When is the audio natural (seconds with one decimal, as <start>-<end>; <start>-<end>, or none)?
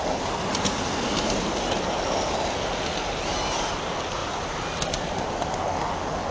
0.0-4.2; 5.3-6.3